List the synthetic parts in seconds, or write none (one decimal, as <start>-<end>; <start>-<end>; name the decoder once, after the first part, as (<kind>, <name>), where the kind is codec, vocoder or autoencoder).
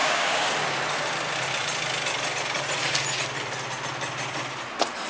0.0-0.5 (codec, DAC)